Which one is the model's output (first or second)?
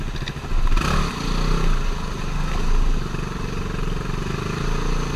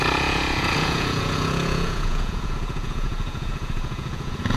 second